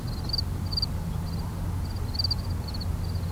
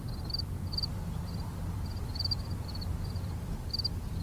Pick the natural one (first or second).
first